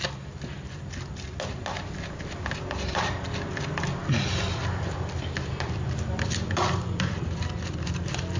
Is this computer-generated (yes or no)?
no